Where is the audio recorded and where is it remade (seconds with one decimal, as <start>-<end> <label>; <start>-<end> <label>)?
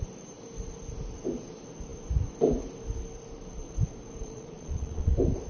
0.0-4.2 recorded; 4.2-5.1 remade; 5.1-5.5 recorded